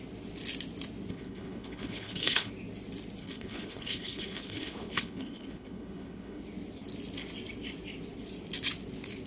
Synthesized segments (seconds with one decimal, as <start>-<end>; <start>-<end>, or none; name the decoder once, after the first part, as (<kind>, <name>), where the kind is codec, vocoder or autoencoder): 1.1-2.5 (codec, HILCodec); 3.2-6.4